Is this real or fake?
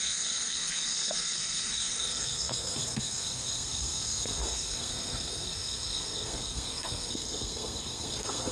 fake